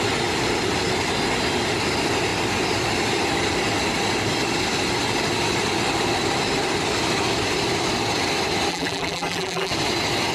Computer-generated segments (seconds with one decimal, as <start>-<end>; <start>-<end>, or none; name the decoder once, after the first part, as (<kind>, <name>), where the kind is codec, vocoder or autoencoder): 8.7-9.7 (vocoder, BigVGAN v2)